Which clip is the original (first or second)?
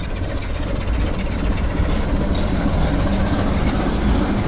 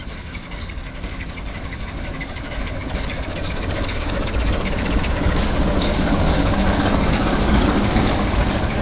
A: first